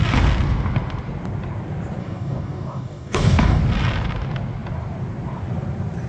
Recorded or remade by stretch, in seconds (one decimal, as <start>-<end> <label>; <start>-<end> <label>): 0.0-2.0 recorded; 2.0-3.6 remade; 3.6-6.1 recorded